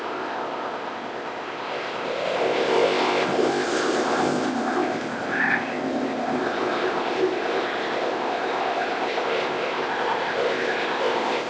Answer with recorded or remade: remade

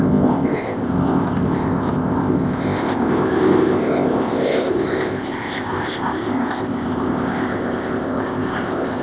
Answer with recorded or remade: remade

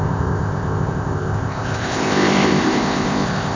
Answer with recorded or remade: remade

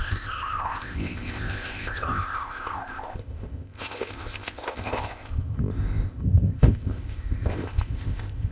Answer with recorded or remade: remade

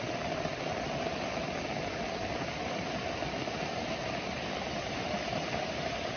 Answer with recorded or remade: recorded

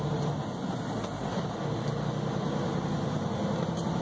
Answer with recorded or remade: recorded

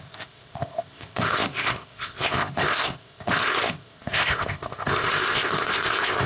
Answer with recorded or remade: remade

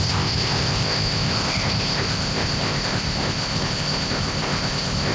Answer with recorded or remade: remade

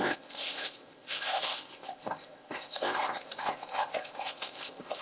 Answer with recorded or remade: remade